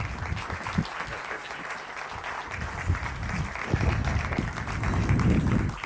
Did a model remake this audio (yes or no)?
no